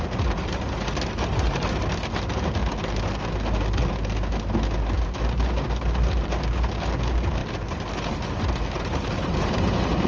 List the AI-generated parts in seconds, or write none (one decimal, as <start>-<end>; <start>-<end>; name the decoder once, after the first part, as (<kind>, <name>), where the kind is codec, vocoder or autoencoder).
none